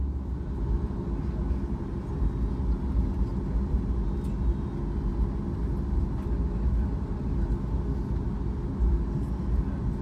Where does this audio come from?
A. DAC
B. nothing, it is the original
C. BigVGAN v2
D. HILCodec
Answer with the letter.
B